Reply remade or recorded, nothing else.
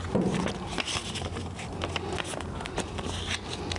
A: recorded